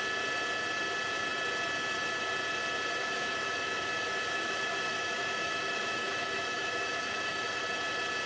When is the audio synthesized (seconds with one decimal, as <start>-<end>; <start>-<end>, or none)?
3.0-7.6